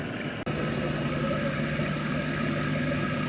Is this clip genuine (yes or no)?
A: yes